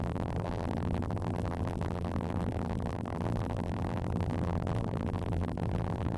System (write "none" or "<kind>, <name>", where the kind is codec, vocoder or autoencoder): vocoder, BigVGAN v2